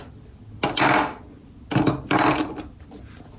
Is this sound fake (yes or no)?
no